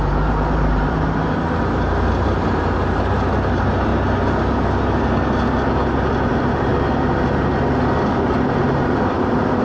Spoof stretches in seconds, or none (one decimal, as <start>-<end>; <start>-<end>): 0.0-3.9; 6.3-6.7; 8.1-9.6